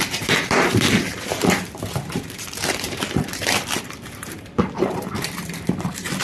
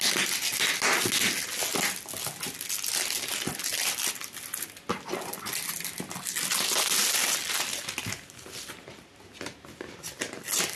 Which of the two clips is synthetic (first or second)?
first